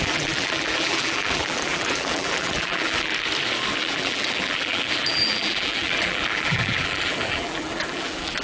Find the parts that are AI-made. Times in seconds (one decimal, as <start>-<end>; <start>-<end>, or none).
0.0-3.1; 3.8-8.4